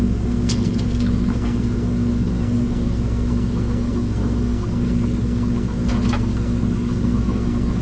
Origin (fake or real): fake